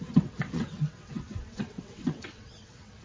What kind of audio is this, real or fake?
fake